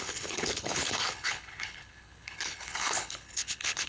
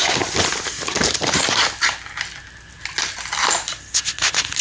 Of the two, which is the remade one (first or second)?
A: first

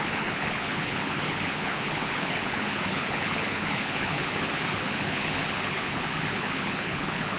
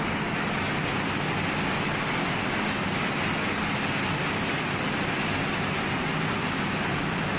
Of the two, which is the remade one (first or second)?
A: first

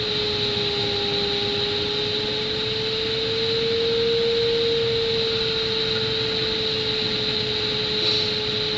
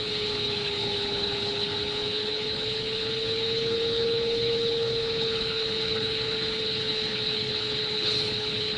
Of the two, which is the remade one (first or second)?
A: second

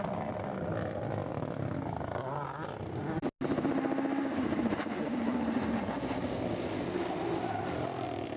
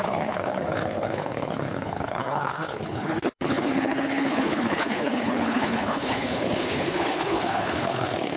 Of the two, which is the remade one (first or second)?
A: second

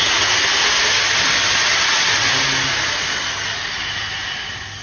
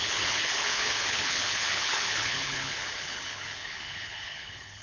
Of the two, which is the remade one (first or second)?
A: second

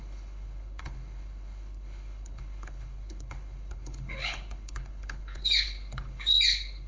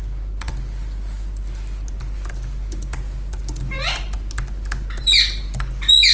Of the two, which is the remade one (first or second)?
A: first